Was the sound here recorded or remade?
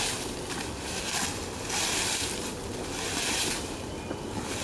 recorded